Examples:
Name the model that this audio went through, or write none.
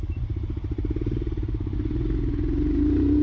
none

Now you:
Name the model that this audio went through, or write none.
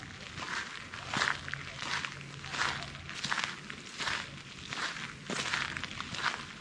none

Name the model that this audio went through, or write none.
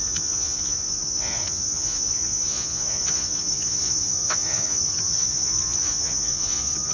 vocoder, Vocos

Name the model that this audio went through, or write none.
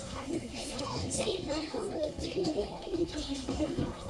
codec, SNAC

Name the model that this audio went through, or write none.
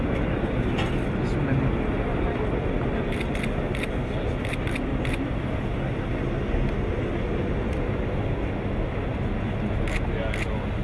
none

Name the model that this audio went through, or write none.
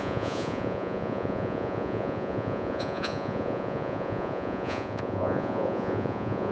vocoder, Vocos